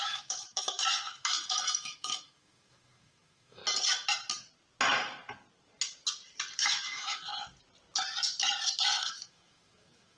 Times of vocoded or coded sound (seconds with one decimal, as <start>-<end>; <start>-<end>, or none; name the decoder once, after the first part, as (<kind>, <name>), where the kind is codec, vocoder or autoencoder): 0.0-3.6 (autoencoder, DAC-VAE); 6.6-7.3; 9.0-10.2